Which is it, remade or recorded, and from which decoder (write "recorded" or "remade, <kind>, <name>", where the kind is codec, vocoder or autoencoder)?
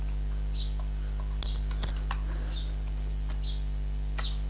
recorded